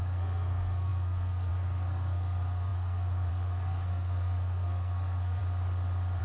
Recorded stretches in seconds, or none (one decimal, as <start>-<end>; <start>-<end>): 5.4-6.2